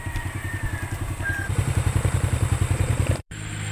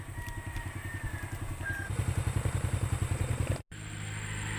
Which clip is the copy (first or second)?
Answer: first